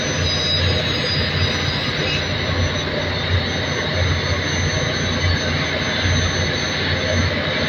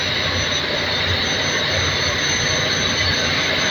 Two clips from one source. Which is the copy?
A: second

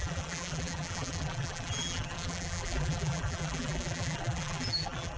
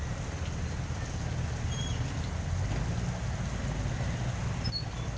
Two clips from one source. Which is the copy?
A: first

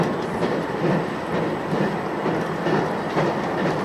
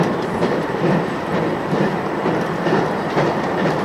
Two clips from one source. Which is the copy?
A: second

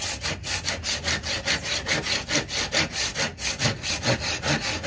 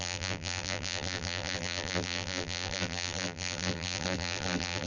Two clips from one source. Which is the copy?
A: second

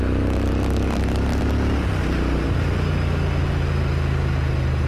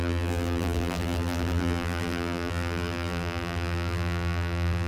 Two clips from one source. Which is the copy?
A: second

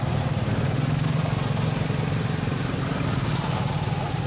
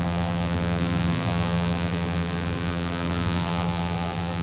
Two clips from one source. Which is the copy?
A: second